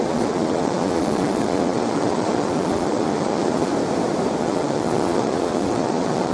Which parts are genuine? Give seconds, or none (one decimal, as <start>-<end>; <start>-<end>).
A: 3.7-4.4